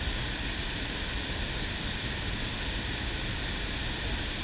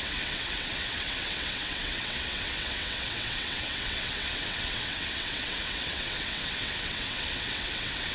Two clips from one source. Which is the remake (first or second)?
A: second